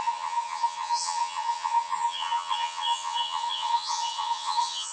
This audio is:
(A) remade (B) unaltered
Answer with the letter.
A